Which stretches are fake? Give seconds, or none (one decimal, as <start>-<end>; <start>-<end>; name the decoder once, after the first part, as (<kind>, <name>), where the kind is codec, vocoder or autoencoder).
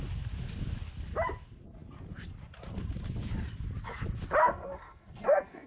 4.4-5.7 (codec, SNAC)